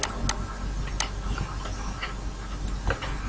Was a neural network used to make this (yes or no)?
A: no